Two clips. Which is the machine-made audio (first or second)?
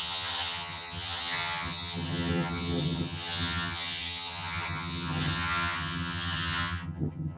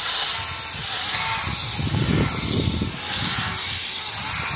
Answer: first